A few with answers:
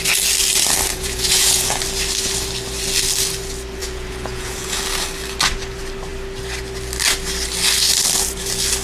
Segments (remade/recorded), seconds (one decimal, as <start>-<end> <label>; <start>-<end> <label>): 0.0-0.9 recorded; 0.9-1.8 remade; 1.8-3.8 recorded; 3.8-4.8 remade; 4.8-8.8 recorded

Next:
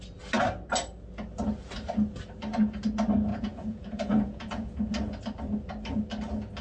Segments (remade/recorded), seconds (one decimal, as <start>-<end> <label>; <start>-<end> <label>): 0.0-3.3 recorded; 3.3-4.9 remade; 4.9-6.6 recorded

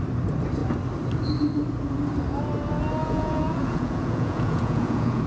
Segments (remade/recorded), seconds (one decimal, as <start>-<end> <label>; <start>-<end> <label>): 0.0-3.0 recorded; 3.0-5.3 remade

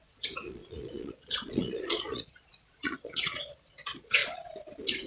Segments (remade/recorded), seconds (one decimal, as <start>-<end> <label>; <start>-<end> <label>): 0.0-4.2 remade; 4.2-5.1 recorded